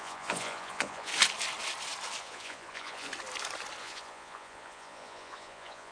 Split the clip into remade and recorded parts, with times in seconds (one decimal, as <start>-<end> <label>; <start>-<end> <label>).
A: 0.0-1.1 remade; 1.1-2.2 recorded; 2.2-3.1 remade; 3.1-3.8 recorded; 3.8-5.9 remade